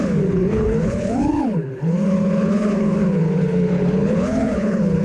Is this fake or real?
fake